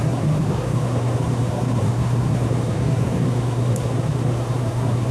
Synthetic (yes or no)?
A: yes